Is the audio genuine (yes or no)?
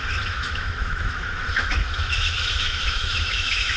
no